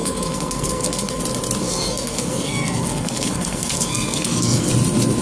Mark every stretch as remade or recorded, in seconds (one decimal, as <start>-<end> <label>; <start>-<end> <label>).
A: 0.0-1.2 remade; 1.2-1.6 recorded; 1.6-4.7 remade; 4.7-5.2 recorded